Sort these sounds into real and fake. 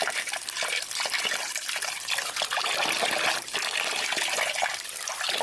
real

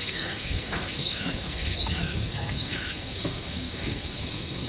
fake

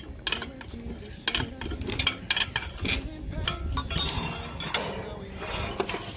real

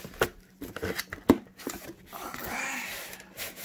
real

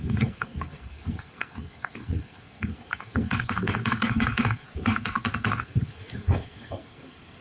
fake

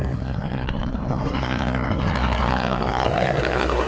fake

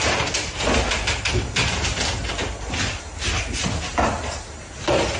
real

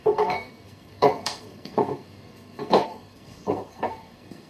fake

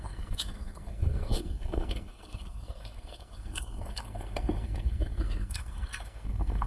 fake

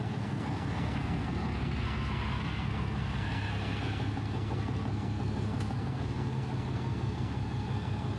fake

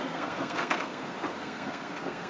fake